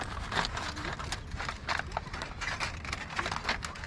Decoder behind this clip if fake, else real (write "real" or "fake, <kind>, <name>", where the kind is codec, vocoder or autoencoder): real